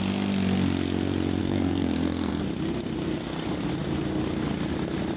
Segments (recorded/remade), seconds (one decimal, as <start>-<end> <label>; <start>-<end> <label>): 0.0-1.4 recorded; 1.4-2.3 remade; 2.3-5.2 recorded

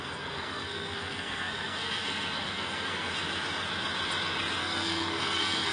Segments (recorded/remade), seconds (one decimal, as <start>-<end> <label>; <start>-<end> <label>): 0.0-3.1 remade; 3.1-4.6 recorded; 4.6-5.7 remade

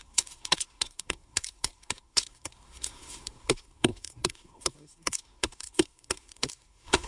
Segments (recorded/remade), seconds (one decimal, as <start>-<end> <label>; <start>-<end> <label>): 0.0-7.1 remade

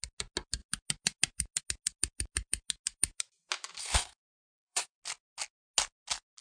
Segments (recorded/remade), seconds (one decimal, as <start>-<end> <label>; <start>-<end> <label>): 0.0-3.8 recorded; 3.8-5.0 remade; 5.0-6.4 recorded